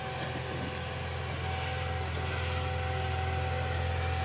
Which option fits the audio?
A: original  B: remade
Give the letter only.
A